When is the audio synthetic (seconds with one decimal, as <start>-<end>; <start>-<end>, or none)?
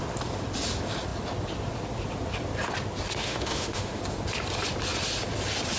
3.2-4.0